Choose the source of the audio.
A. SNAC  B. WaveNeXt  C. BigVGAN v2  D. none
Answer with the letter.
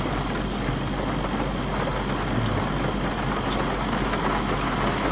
D